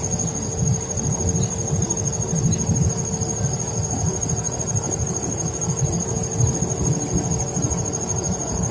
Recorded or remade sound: recorded